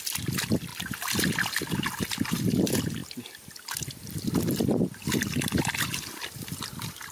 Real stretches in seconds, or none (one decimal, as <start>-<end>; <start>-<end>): 0.0-7.1